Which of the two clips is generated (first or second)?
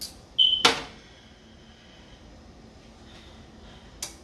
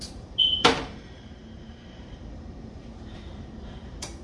second